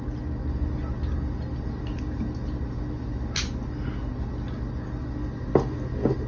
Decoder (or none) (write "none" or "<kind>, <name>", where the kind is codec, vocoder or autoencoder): none